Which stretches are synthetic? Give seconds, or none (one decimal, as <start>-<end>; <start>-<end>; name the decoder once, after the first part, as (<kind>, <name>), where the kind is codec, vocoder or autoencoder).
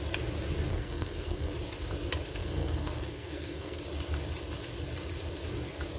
0.7-1.5 (codec, SNAC); 2.4-3.8